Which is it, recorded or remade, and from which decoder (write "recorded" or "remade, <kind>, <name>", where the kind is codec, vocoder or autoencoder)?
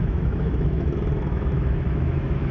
remade, autoencoder, DAC-VAE